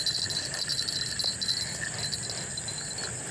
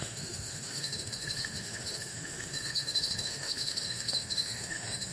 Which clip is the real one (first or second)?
first